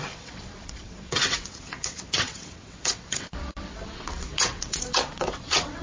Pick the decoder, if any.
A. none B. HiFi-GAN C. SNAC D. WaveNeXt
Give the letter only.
D